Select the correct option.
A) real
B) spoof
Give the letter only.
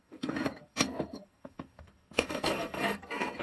B